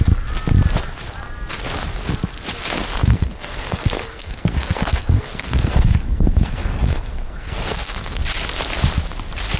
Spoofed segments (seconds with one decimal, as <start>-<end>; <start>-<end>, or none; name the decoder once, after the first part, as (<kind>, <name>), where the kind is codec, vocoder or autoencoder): 3.0-8.2 (codec, SNAC)